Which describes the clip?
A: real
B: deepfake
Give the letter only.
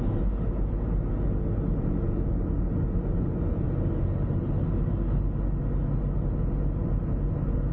A